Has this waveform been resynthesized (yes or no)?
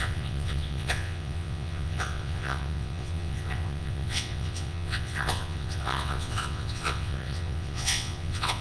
yes